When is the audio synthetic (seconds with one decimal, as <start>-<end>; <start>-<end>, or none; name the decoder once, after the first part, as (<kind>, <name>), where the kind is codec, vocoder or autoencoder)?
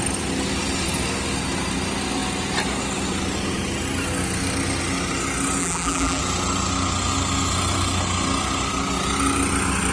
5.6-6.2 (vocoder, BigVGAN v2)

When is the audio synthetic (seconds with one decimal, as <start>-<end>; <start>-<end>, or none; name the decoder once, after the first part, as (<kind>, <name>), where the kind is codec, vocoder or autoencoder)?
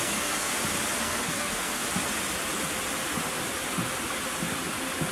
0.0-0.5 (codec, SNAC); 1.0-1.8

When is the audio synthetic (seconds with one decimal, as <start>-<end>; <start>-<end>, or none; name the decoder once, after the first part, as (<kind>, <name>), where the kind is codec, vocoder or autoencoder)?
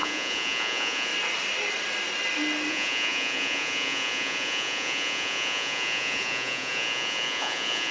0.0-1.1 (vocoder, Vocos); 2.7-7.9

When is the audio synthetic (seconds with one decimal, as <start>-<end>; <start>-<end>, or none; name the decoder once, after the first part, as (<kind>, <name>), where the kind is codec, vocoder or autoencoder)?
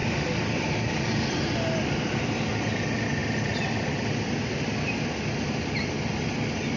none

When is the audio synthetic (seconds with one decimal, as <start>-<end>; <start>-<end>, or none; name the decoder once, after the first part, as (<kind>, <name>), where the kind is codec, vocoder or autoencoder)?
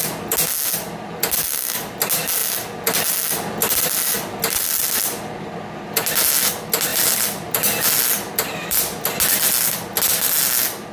none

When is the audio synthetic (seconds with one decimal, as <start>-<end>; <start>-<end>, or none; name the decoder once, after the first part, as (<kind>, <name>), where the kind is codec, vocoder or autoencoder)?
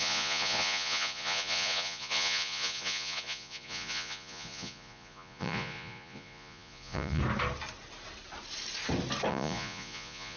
0.0-7.2 (vocoder, Vocos); 9.3-10.4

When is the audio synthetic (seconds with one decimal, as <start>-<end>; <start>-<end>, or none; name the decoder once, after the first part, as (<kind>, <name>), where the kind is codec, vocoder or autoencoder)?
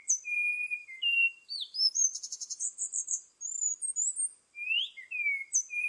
0.8-3.3 (vocoder, BigVGAN v2)